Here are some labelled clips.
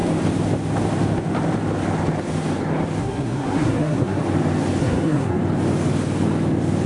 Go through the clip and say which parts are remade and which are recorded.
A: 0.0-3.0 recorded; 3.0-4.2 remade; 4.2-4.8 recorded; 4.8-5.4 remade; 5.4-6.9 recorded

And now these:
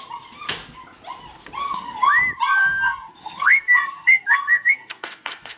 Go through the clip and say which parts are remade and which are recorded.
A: 0.0-1.6 recorded; 1.6-2.1 remade; 2.1-2.6 recorded; 2.6-5.6 remade

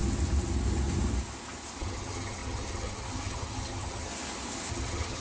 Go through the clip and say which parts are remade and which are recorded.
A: 0.0-1.8 recorded; 1.8-4.1 remade; 4.1-4.7 recorded; 4.7-5.2 remade

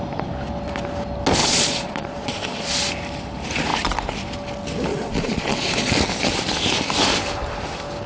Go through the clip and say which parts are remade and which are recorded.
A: 0.0-1.4 recorded; 1.4-2.7 remade; 2.7-4.9 recorded; 4.9-5.9 remade; 5.9-8.1 recorded

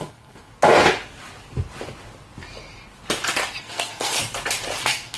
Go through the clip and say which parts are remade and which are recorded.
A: 0.0-0.5 remade; 0.5-3.6 recorded; 3.6-4.2 remade; 4.2-4.8 recorded; 4.8-5.2 remade

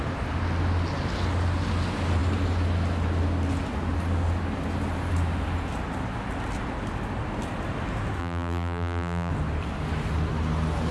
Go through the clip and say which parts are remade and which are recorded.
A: 0.0-8.2 recorded; 8.2-9.3 remade; 9.3-10.9 recorded

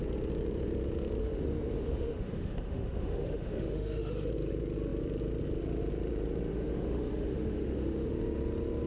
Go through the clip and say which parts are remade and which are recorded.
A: 0.0-1.2 recorded; 1.2-4.3 remade; 4.3-6.5 recorded; 6.5-8.1 remade; 8.1-8.9 recorded

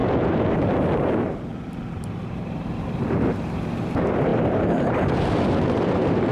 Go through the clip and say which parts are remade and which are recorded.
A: 0.0-6.3 remade